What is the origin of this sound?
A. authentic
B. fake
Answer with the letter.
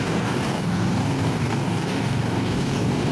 B